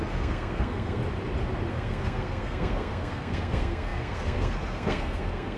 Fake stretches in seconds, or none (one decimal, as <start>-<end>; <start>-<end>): 0.0-1.0; 1.7-5.6